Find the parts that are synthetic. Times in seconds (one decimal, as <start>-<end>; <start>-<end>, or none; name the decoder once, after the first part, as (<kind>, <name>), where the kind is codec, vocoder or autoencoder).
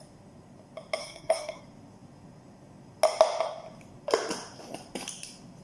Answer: 1.0-1.6 (codec, SNAC)